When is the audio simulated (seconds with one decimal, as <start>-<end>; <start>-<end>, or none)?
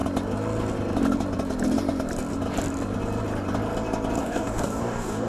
4.2-5.3